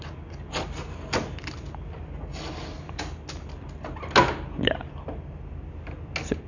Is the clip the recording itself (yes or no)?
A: yes